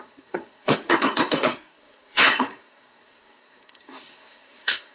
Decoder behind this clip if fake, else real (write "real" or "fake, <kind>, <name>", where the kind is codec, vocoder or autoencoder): fake, codec, SNAC